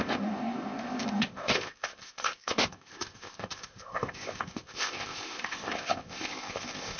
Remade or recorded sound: remade